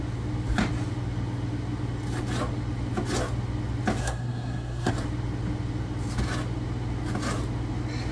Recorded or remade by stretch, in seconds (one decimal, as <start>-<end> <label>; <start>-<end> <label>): 0.0-4.0 recorded; 4.0-4.9 remade; 4.9-8.1 recorded